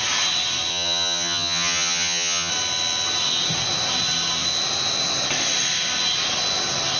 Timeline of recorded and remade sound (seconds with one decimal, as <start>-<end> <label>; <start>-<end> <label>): 0.0-0.7 recorded; 0.7-2.5 remade; 2.5-7.0 recorded